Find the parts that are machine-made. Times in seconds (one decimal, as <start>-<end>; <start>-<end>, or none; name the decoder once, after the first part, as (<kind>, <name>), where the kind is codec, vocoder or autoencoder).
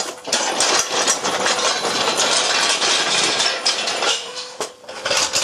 4.1-4.7 (autoencoder, DAC-VAE)